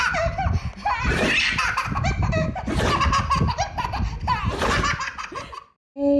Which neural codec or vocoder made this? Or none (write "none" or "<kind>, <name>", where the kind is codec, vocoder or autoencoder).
none